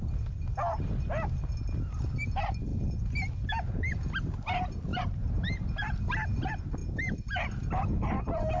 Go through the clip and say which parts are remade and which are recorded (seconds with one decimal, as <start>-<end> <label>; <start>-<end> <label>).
0.0-4.9 recorded; 4.9-6.0 remade; 6.0-8.6 recorded